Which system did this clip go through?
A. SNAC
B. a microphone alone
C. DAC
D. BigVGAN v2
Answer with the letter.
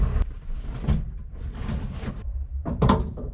D